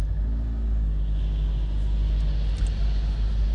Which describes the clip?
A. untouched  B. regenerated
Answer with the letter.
A